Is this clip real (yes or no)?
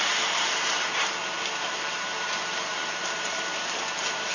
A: no